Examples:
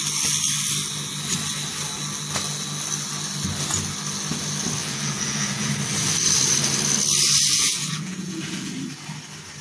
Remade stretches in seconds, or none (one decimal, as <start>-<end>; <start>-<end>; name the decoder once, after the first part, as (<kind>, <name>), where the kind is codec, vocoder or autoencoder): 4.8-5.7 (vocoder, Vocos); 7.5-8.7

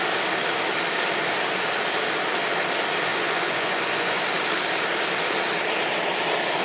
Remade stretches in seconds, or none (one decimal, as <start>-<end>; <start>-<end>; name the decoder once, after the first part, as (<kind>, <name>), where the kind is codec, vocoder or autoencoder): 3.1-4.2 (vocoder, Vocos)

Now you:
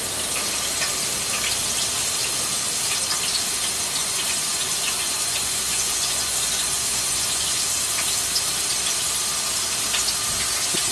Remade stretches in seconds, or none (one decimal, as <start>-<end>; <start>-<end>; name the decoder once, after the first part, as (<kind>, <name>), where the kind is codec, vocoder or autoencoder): 4.0-7.6 (vocoder, Vocos)